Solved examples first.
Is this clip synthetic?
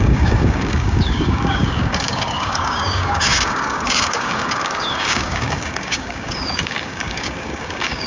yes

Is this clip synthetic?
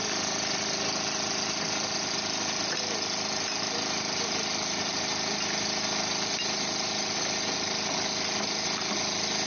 no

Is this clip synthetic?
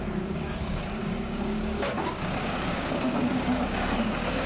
yes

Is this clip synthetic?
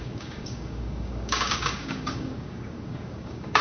yes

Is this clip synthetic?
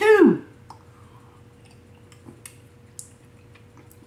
no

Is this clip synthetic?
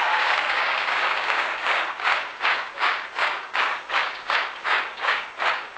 yes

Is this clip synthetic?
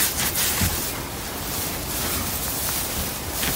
no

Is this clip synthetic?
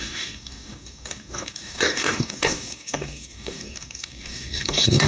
yes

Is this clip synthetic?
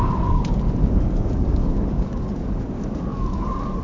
yes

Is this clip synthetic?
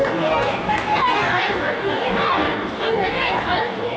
yes